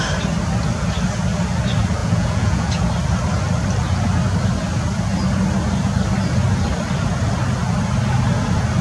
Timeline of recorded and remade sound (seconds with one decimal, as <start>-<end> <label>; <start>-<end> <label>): 0.0-2.0 recorded; 2.0-2.8 remade; 2.8-8.8 recorded